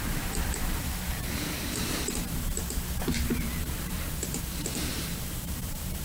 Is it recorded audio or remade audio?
remade